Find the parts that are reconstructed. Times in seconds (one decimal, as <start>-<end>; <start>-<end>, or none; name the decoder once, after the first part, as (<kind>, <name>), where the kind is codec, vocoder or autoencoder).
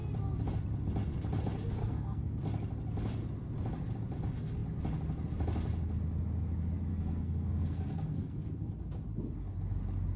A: 1.8-2.4 (codec, SNAC); 6.9-8.7